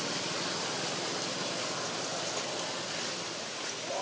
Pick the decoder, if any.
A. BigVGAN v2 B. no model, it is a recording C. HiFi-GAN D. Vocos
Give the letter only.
B